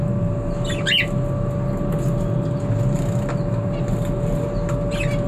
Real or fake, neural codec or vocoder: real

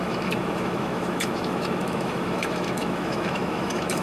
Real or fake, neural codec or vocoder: fake, autoencoder, DAC-VAE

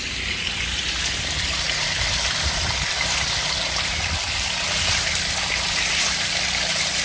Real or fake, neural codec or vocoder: real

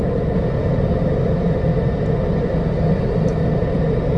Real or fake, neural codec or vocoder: real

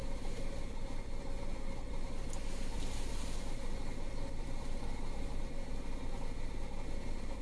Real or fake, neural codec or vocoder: real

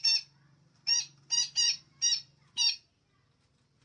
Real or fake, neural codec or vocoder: real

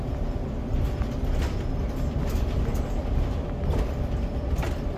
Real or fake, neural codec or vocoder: real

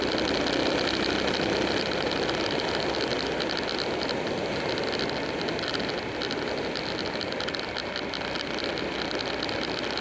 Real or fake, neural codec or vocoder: real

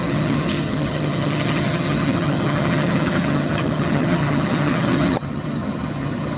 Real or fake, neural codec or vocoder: fake, vocoder, HiFi-GAN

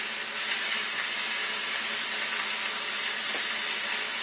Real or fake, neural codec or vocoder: real